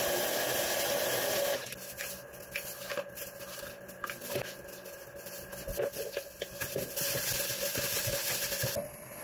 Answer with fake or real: real